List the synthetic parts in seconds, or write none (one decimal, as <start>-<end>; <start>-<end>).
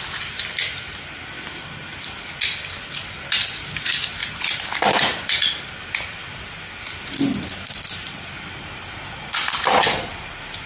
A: none